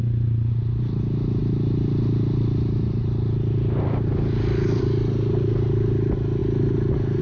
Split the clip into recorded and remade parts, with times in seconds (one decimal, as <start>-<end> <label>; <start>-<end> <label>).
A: 0.0-7.2 recorded